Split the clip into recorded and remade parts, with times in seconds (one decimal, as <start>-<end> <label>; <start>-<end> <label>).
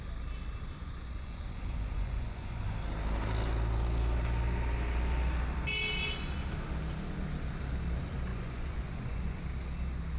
0.0-0.8 recorded; 0.8-2.6 remade; 2.6-8.3 recorded; 8.3-9.4 remade; 9.4-10.2 recorded